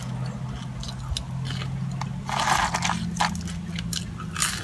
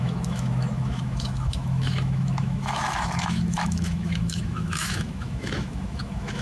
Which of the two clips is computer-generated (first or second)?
second